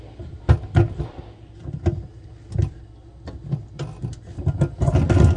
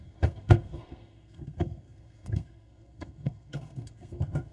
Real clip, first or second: first